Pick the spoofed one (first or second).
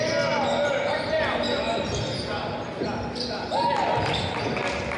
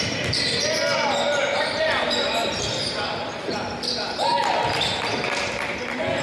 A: second